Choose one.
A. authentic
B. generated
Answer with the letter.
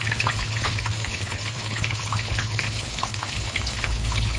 B